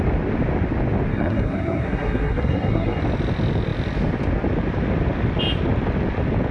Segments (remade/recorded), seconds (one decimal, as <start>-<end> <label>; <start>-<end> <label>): 0.0-1.1 recorded; 1.1-3.0 remade; 3.0-6.5 recorded

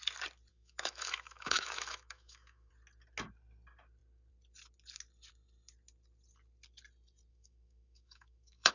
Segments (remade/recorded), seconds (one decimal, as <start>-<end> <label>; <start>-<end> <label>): 0.0-0.5 recorded; 0.5-2.7 remade; 2.7-7.3 recorded; 7.3-8.7 remade